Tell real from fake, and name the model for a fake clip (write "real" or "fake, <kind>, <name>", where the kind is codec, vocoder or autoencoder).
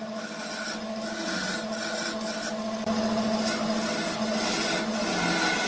real